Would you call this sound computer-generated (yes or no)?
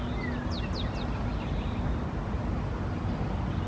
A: no